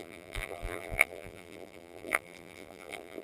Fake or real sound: fake